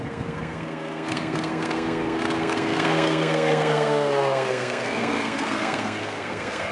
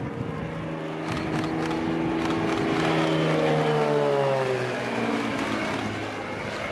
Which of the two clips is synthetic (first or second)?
first